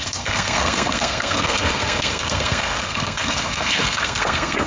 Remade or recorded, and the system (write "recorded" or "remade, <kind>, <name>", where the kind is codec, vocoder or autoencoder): remade, codec, SNAC